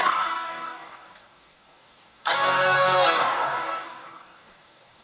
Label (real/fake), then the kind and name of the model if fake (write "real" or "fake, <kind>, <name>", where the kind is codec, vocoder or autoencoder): fake, codec, DAC